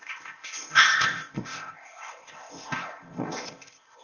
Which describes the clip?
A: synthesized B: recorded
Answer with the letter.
A